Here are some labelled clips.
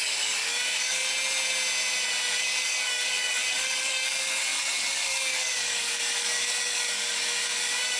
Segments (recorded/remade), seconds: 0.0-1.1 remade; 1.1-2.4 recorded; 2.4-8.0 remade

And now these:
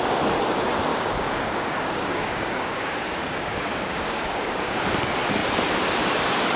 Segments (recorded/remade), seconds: 0.0-0.9 recorded; 0.9-4.9 remade; 4.9-6.6 recorded

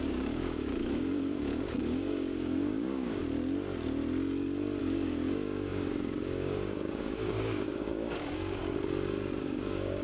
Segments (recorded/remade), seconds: 0.0-3.2 remade; 3.2-4.8 recorded; 4.8-8.6 remade; 8.6-9.4 recorded; 9.4-10.0 remade